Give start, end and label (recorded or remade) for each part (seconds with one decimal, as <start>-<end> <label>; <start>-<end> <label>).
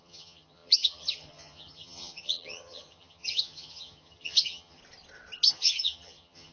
0.0-4.8 remade; 4.8-5.5 recorded; 5.5-6.5 remade